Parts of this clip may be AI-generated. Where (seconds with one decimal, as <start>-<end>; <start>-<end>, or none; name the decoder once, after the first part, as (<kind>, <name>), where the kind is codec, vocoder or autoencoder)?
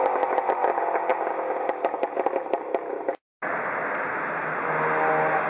none